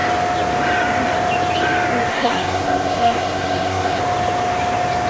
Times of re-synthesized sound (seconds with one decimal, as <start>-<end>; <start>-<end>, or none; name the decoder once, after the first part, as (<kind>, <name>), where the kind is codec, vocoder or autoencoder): 2.1-4.0 (codec, SNAC)